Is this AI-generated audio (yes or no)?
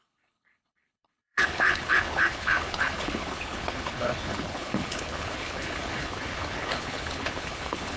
yes